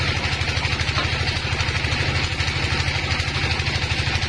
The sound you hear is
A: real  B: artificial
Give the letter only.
A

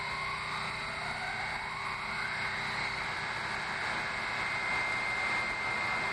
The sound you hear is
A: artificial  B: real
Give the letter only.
B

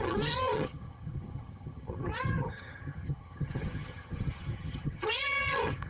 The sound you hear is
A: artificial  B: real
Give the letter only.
A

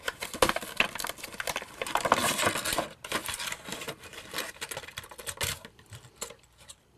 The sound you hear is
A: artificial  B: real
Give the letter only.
B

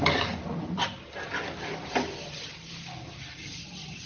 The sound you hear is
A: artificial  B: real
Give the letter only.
B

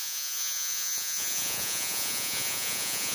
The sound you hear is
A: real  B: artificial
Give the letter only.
B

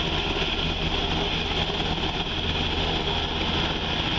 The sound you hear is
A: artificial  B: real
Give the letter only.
B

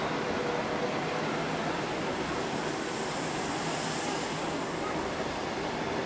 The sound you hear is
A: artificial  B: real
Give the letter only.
B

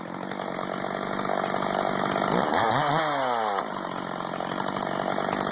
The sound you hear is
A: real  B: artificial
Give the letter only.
A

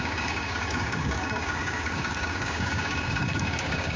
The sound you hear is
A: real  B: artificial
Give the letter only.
B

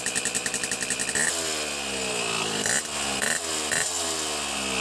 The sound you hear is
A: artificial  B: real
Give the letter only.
B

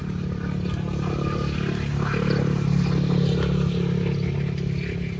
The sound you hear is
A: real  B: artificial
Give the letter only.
A